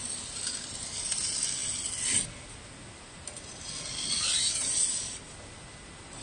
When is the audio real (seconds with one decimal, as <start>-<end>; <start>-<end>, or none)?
0.0-6.2